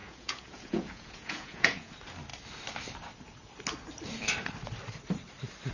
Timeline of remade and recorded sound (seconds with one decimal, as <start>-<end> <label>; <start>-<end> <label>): 0.0-1.9 remade; 1.9-5.7 recorded